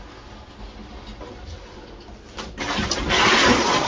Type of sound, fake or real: real